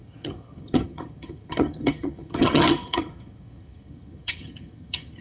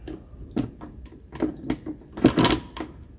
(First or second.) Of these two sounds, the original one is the second